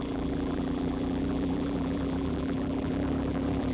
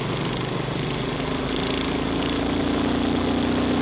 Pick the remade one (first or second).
first